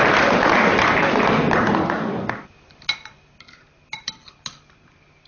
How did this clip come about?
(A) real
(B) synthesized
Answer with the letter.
A